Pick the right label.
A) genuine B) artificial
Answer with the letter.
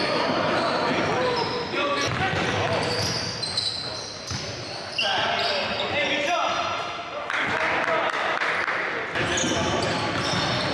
A